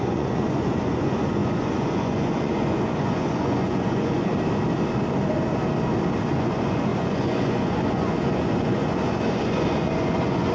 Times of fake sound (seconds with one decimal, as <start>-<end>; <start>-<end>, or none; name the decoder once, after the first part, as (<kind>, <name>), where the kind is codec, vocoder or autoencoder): 0.0-4.3 (vocoder, Vocos); 6.3-10.5